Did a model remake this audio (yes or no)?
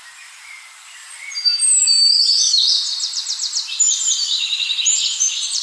yes